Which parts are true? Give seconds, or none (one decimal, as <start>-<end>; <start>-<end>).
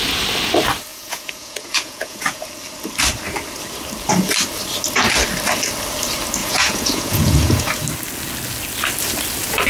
0.0-0.9; 2.5-6.4; 7.7-9.7